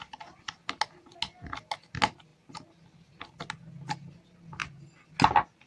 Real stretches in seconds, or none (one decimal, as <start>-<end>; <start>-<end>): 0.0-5.7